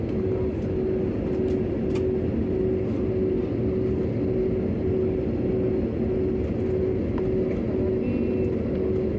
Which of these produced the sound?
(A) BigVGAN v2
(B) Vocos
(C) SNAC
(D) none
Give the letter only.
D